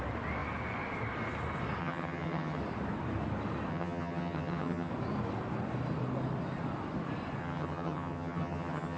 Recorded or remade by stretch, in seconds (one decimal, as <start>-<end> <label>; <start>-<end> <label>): 0.0-1.8 recorded; 1.8-2.6 remade; 2.6-3.7 recorded; 3.7-4.9 remade; 4.9-7.4 recorded; 7.4-9.0 remade